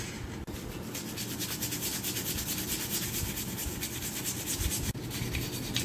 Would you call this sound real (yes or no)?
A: yes